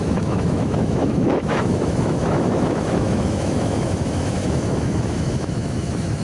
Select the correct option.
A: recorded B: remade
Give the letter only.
B